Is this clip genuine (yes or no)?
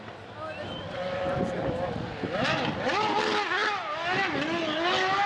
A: yes